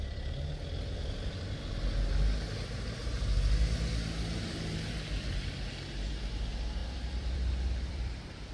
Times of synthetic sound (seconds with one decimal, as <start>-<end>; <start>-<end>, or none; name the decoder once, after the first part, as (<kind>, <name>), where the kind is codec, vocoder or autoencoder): 6.8-8.5 (vocoder, BigVGAN v2)